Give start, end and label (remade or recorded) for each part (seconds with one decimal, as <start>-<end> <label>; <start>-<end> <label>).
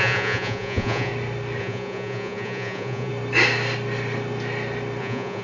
0.0-1.1 remade; 1.1-1.6 recorded; 1.6-3.1 remade; 3.1-5.0 recorded; 5.0-5.4 remade